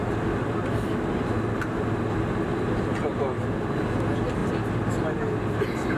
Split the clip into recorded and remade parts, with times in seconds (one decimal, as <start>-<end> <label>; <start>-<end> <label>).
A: 0.0-6.0 recorded